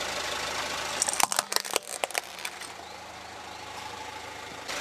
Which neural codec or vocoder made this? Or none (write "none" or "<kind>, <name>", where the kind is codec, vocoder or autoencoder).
none